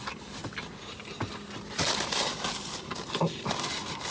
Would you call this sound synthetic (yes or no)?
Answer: no